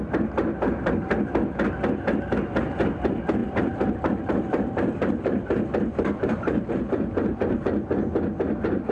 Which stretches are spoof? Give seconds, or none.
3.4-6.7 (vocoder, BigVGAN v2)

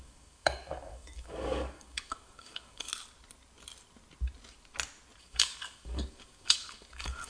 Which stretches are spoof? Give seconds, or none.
0.0-2.9 (codec, DAC); 5.2-7.3

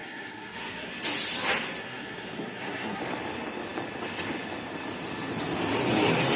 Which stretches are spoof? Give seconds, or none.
0.0-0.9 (codec, SNAC); 1.8-3.0

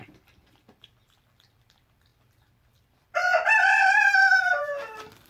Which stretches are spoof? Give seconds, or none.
0.0-5.3 (vocoder, BigVGAN v2)

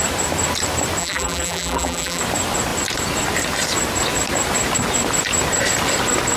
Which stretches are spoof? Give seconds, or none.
1.0-2.2 (vocoder, BigVGAN v2)

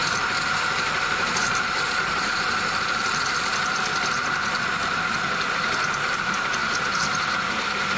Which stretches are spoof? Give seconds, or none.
0.0-6.6 (vocoder, BigVGAN v2); 7.3-8.0

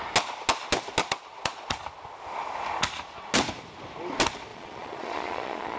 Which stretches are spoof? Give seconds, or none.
1.0-1.7 (vocoder, Vocos); 4.5-5.8

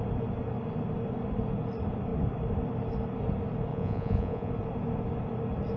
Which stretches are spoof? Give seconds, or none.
3.7-4.5 (vocoder, Vocos)